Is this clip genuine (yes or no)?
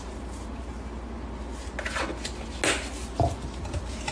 yes